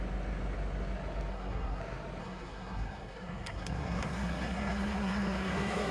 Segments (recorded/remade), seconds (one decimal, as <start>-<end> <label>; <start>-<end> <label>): 0.0-1.3 recorded; 1.3-1.8 remade; 1.8-2.2 recorded; 2.2-5.9 remade